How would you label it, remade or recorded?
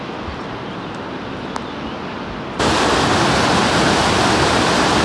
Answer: recorded